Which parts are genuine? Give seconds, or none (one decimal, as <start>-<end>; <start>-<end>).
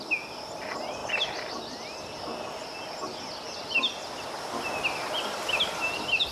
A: 1.0-4.8